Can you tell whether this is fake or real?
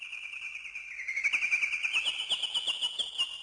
real